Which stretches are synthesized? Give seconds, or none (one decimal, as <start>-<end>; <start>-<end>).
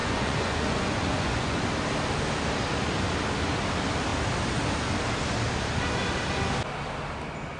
0.0-1.6